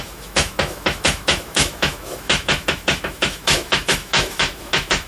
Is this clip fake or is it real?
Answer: fake